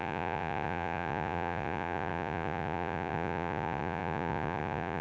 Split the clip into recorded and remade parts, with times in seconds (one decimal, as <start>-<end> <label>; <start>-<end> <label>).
0.0-5.0 remade